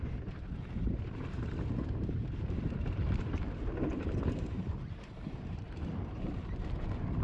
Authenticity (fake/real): fake